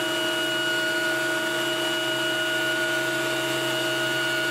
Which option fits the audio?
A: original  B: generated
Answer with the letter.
A